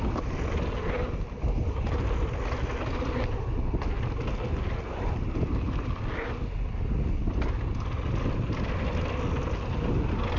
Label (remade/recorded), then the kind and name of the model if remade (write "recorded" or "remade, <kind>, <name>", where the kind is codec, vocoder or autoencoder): recorded